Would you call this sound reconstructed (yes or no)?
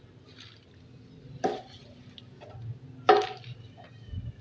no